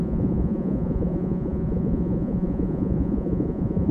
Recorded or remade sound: remade